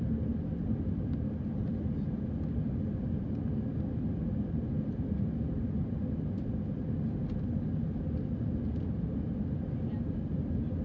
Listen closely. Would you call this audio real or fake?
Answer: real